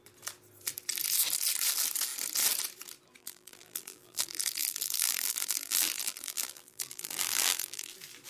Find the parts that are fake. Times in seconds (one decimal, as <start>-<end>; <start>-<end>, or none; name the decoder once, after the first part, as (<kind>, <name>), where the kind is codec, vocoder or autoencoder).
3.2-7.9 (vocoder, BigVGAN v2)